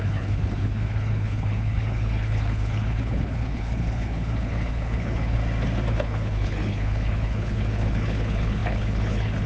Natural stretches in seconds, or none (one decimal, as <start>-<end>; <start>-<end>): 5.4-5.9